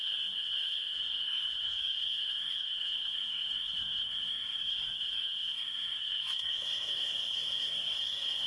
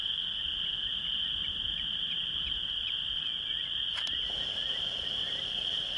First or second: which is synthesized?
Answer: first